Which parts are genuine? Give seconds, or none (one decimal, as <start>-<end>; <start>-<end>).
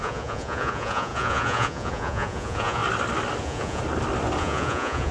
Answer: 2.8-3.4; 3.8-4.4